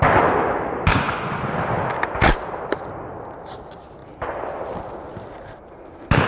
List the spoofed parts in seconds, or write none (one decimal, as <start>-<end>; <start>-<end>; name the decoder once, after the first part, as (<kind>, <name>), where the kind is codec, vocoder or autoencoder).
0.9-1.5 (vocoder, Vocos)